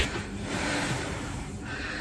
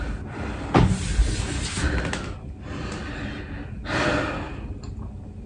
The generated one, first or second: first